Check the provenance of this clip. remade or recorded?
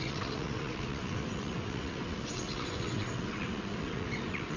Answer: remade